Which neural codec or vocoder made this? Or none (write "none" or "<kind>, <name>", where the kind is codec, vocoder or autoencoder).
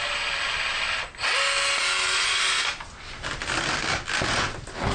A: none